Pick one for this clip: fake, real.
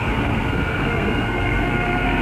fake